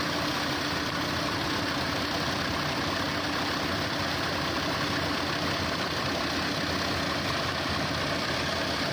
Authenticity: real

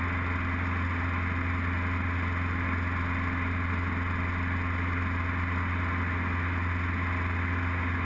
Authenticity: real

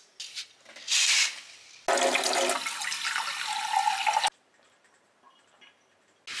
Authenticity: real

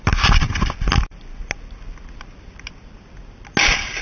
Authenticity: real